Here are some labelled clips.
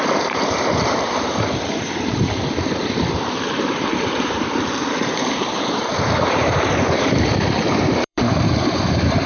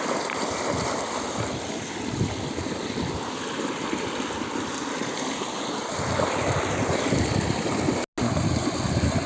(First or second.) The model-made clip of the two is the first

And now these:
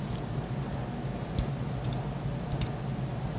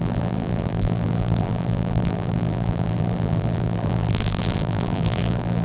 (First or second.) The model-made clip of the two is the second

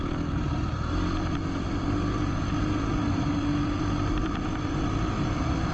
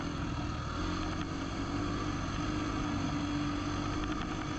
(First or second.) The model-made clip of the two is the first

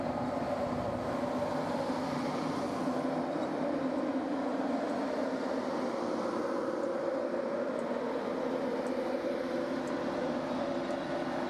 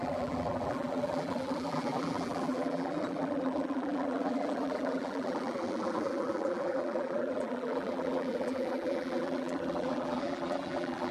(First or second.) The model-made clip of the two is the second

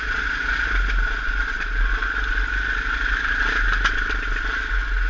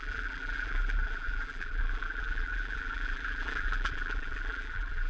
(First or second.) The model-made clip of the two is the second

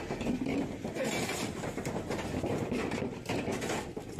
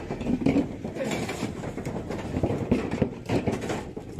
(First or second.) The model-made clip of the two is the second